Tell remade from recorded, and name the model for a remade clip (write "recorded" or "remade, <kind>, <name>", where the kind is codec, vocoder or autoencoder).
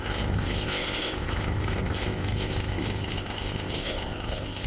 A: remade, codec, ZipCodec